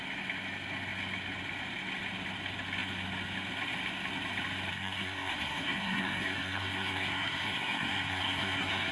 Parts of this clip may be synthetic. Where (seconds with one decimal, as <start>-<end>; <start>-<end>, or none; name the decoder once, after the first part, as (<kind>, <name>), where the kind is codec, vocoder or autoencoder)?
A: 4.7-8.9 (codec, SNAC)